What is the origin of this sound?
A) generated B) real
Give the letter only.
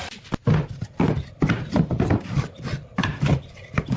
B